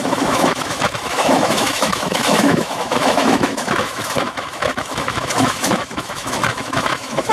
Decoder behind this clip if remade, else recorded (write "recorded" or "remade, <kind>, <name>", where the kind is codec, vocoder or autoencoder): remade, autoencoder, DAC-VAE